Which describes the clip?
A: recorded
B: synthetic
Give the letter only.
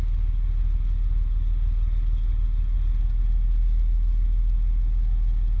A